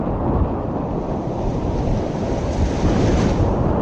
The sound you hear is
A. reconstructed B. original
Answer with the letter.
B